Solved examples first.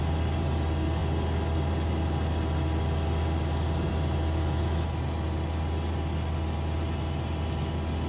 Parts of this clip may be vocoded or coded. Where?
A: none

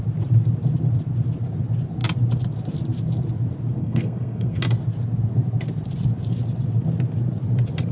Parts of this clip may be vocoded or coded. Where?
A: 3.8-4.6 (codec, SNAC)

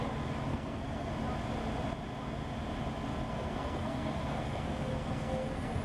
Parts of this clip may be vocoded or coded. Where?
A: 0.5-1.1 (codec, SNAC); 3.3-5.8

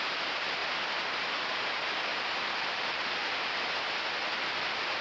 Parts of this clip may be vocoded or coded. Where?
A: none

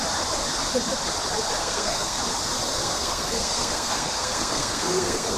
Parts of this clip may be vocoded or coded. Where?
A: 1.6-2.2 (codec, SNAC); 2.7-5.4

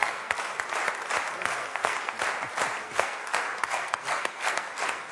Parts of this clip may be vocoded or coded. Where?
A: 0.0-0.6 (codec, SNAC); 1.3-2.1; 2.8-5.1